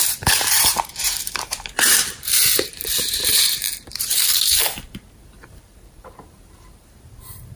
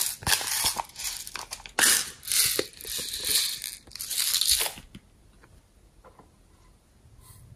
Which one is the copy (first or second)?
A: first